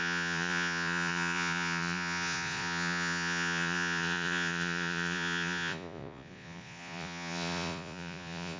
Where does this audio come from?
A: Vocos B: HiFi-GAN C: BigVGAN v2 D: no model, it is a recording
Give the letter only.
A